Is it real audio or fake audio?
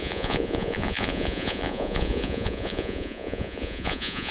fake